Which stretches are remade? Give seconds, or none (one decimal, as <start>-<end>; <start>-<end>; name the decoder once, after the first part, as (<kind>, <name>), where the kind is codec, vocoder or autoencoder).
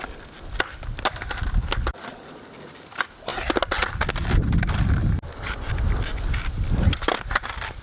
none